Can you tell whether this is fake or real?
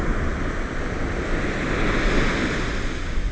real